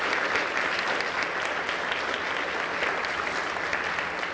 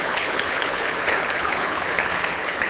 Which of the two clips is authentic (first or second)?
first